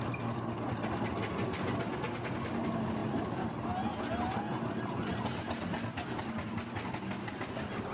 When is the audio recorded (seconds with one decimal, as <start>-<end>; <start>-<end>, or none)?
0.0-7.9